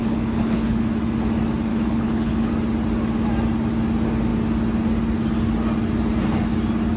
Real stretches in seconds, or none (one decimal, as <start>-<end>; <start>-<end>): 0.8-1.7; 2.5-7.0